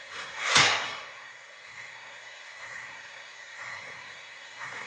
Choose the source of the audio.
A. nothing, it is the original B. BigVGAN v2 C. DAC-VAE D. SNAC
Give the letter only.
D